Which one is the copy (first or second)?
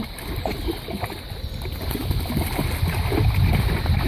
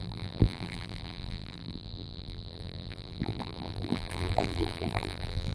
second